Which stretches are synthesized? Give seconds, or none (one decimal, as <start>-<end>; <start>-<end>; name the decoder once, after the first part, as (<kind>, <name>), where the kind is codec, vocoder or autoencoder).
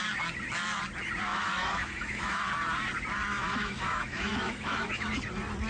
1.3-2.4 (autoencoder, DAC-VAE); 3.3-5.1